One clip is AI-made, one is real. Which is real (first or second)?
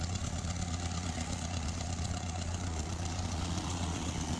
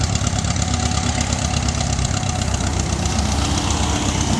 second